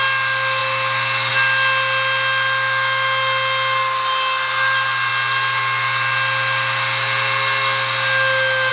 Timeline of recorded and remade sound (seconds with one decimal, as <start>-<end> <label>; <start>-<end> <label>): 0.0-8.7 recorded